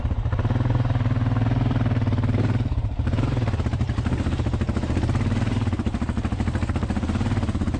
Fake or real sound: fake